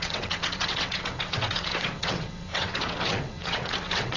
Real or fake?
fake